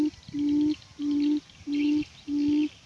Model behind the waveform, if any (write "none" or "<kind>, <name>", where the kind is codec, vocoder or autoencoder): none